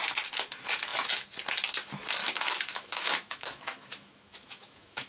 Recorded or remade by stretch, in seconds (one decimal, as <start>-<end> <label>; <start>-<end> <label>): 0.0-2.2 recorded; 2.2-5.1 remade